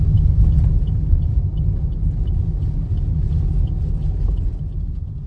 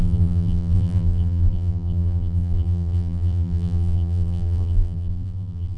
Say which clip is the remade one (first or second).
second